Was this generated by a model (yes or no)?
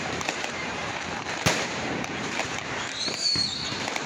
yes